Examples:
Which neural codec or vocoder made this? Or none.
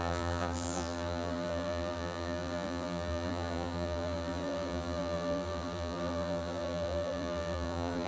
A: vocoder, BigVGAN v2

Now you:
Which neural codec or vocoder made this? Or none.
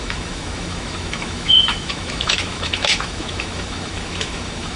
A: autoencoder, DAC-VAE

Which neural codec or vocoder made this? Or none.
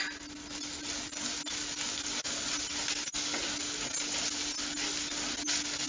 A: none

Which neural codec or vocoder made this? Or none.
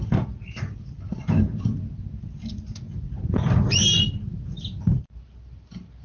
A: none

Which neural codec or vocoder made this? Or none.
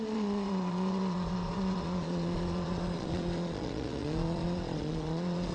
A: vocoder, Vocos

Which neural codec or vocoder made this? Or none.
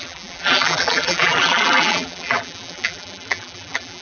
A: vocoder, BigVGAN v2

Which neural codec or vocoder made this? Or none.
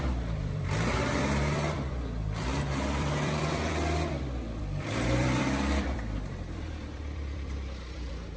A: vocoder, BigVGAN v2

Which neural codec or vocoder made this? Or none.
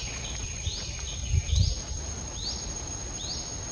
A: none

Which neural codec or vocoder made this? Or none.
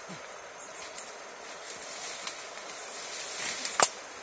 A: none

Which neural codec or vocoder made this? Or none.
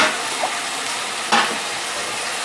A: none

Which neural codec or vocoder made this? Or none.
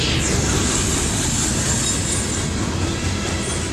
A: none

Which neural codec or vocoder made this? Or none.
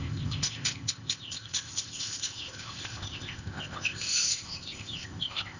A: codec, ZipCodec